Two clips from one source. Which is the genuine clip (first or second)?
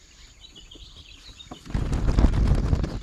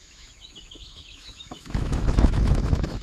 first